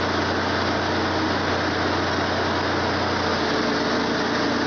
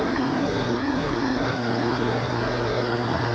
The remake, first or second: second